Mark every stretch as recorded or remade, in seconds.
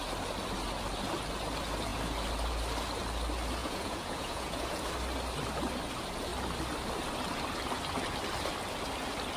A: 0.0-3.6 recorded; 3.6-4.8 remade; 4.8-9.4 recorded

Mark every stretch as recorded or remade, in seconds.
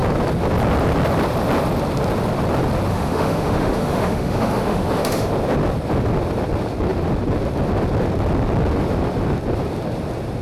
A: 0.0-2.9 recorded; 2.9-5.3 remade; 5.3-10.4 recorded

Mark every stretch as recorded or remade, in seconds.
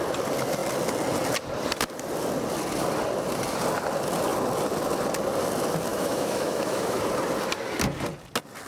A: 0.0-5.9 recorded; 5.9-7.0 remade; 7.0-8.7 recorded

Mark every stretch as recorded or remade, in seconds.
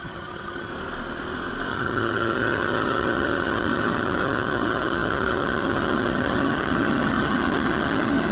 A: 0.0-0.7 remade; 0.7-1.7 recorded; 1.7-8.3 remade